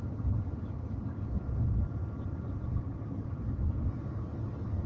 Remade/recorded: recorded